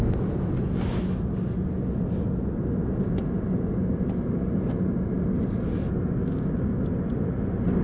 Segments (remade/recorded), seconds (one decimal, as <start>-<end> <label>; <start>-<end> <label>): 0.0-6.2 recorded; 6.2-6.8 remade; 6.8-7.8 recorded